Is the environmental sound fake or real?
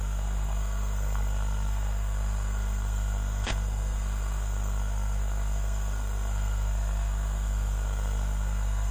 fake